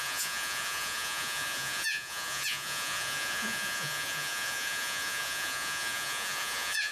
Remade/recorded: remade